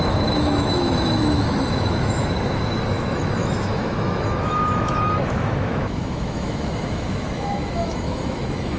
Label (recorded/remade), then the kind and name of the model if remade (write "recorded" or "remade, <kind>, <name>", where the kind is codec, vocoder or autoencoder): remade, autoencoder, DAC-VAE